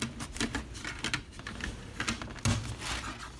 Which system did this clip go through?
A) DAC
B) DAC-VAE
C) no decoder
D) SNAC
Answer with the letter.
C